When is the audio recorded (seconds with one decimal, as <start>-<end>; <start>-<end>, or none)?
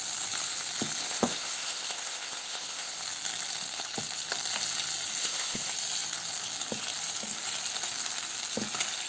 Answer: 0.0-1.0; 3.0-5.2; 5.7-9.1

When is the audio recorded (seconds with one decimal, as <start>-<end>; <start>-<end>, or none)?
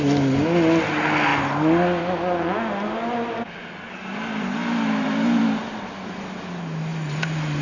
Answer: 0.0-7.6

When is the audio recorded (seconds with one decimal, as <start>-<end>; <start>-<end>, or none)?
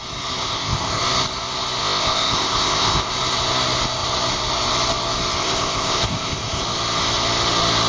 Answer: 0.0-0.4; 1.0-1.8; 3.1-5.4; 6.6-7.9